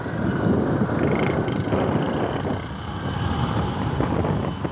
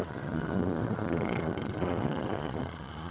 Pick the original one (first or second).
first